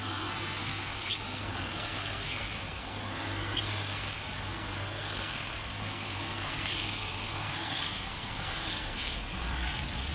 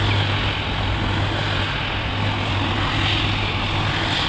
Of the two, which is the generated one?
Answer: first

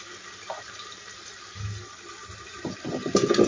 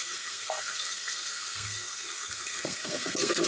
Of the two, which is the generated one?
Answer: second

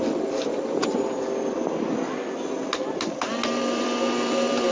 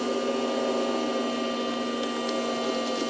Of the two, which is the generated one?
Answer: first